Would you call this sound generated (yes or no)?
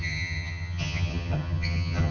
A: yes